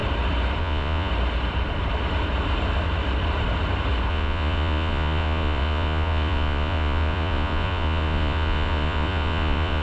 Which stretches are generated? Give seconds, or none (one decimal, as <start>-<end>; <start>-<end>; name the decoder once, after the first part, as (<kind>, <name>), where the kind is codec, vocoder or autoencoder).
0.6-1.1 (vocoder, Vocos); 4.1-9.8